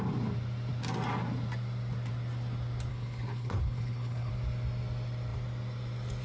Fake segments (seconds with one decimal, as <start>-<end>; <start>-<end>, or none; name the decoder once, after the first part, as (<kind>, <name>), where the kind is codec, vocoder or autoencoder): 2.9-4.3 (codec, HILCodec)